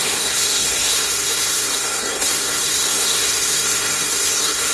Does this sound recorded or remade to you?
remade